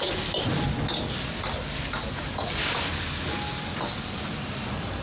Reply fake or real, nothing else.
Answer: real